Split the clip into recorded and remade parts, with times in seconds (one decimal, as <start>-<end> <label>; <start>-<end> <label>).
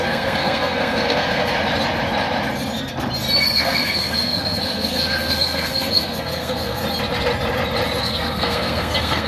0.0-1.5 remade; 1.5-3.4 recorded; 3.4-6.8 remade; 6.8-8.0 recorded; 8.0-9.3 remade